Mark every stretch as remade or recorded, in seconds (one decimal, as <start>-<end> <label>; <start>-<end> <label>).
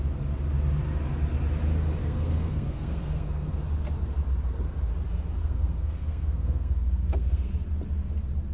0.0-2.0 recorded; 2.0-3.6 remade; 3.6-5.4 recorded; 5.4-7.5 remade; 7.5-8.5 recorded